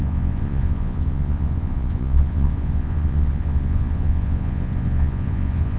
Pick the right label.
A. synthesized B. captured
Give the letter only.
A